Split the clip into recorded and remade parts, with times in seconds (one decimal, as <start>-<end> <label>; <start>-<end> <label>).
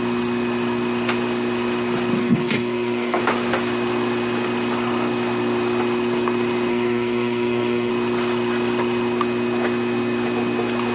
0.0-2.2 recorded; 2.2-3.2 remade; 3.2-6.7 recorded; 6.7-7.9 remade; 7.9-10.9 recorded